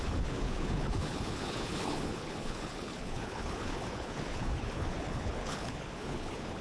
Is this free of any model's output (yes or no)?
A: no